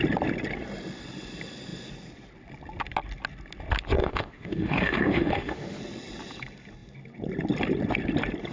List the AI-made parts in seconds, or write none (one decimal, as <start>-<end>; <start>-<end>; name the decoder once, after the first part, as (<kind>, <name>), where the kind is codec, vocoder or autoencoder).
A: 4.0-5.8 (autoencoder, DAC-VAE)